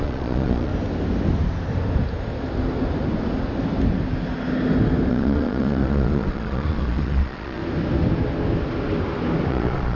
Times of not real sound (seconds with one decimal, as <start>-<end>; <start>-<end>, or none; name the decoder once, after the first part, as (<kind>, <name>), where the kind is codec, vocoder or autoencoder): 0.0-0.7 (vocoder, Vocos); 5.1-7.6; 9.5-9.9